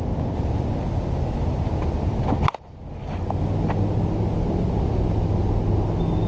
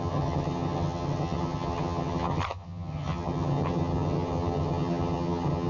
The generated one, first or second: second